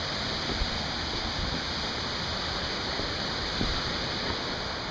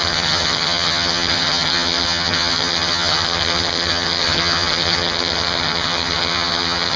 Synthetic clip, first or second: second